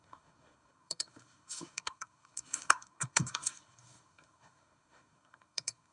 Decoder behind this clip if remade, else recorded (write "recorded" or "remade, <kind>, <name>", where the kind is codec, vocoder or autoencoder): remade, codec, SNAC